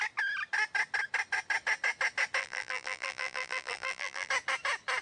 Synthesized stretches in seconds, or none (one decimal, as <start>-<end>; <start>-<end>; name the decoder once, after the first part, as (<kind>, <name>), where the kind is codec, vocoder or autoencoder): 2.4-4.3 (vocoder, BigVGAN v2)

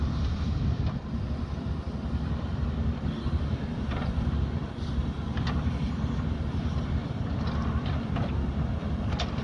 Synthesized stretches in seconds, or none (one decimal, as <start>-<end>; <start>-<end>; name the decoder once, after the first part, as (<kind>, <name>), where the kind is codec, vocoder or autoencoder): 0.0-6.7 (vocoder, BigVGAN v2); 7.7-9.4